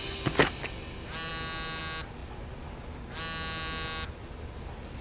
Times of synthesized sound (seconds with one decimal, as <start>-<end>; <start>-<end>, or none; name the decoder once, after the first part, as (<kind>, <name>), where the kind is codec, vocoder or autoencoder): none

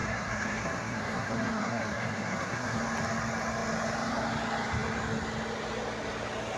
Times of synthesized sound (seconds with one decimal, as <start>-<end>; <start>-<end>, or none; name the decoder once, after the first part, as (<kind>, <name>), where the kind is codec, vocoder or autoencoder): 0.0-2.8 (codec, SNAC)

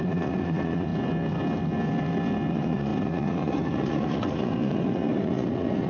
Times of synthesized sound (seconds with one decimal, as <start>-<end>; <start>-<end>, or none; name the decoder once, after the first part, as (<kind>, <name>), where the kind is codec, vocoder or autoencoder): 0.0-0.9 (vocoder, Vocos); 2.5-5.9

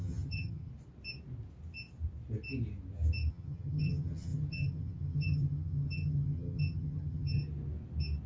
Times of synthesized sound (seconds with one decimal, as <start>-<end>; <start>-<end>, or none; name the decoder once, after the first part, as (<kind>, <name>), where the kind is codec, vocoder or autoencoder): 0.0-0.7 (vocoder, HiFi-GAN); 3.3-7.4

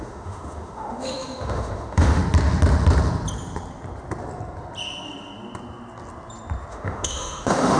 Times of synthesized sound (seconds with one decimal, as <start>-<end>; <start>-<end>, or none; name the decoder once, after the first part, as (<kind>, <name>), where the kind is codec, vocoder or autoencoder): 0.0-2.2 (autoencoder, DAC-VAE); 6.7-7.8

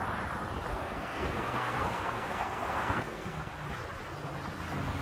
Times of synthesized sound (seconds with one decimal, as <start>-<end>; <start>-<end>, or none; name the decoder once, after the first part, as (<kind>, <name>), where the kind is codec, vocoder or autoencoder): 0.7-3.5 (codec, SNAC)